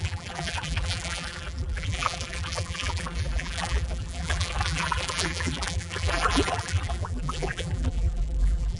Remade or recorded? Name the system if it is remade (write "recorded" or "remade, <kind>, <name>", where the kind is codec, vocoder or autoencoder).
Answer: remade, vocoder, BigVGAN v2